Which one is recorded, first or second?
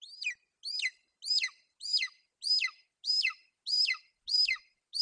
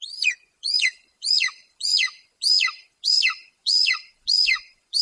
first